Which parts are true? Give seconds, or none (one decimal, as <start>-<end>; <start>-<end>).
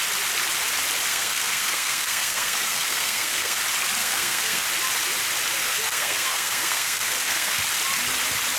0.0-1.1; 3.6-4.0; 4.6-5.6; 7.6-8.6